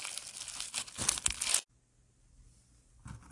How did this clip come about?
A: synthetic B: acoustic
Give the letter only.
B